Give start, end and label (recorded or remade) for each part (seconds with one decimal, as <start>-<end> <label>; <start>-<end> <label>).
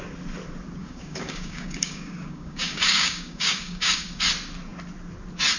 0.0-0.8 recorded; 0.8-4.2 remade; 4.2-5.6 recorded